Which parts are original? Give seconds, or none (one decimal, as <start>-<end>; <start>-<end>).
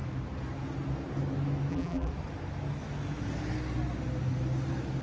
0.0-1.7; 2.1-5.0